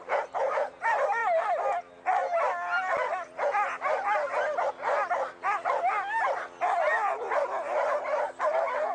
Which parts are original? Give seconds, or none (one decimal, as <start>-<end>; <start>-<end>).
0.0-8.9

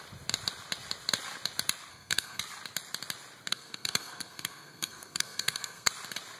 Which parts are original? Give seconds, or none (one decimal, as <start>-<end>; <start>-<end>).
0.0-1.9; 2.4-3.5; 5.9-6.4